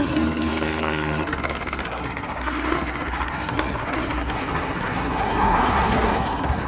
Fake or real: fake